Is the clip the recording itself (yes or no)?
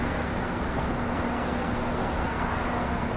no